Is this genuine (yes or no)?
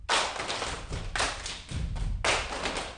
yes